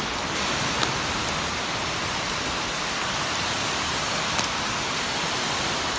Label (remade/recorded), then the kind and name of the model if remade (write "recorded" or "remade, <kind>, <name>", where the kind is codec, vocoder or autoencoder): recorded